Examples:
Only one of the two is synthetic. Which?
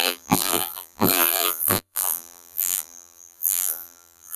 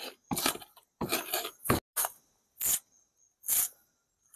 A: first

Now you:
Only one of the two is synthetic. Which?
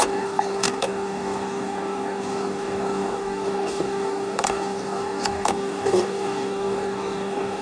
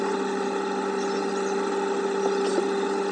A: first